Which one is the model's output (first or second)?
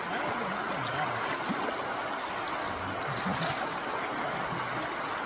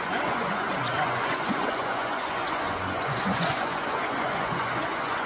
second